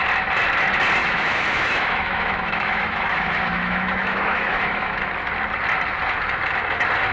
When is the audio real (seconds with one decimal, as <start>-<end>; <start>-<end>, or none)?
0.0-1.0; 5.0-7.1